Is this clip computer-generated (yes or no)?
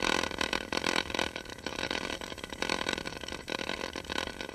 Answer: yes